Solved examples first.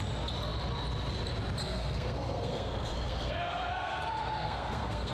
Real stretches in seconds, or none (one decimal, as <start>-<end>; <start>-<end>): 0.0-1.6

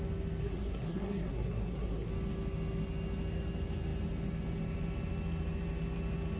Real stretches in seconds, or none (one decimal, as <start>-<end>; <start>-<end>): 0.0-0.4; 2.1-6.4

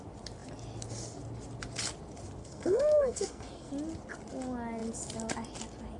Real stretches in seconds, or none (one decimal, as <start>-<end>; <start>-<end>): 0.0-2.4; 3.7-6.0